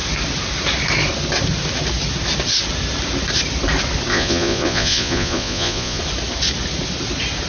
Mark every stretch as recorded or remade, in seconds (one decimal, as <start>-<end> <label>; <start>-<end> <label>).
0.0-4.1 recorded; 4.1-6.0 remade; 6.0-7.5 recorded